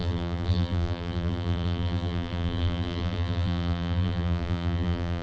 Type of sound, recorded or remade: remade